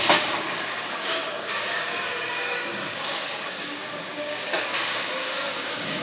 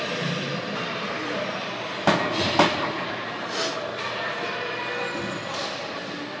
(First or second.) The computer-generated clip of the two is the first